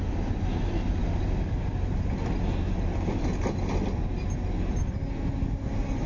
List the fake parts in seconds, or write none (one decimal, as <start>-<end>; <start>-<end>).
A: none